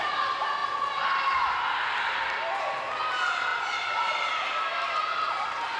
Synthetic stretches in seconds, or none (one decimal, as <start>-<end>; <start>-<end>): none